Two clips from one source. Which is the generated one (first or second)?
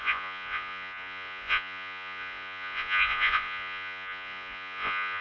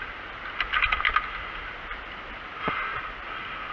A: first